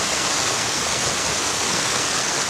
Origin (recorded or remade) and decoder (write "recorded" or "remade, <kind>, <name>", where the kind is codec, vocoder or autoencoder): remade, codec, SNAC